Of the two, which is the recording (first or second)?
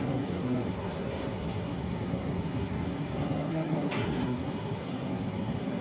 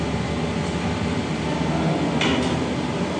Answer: second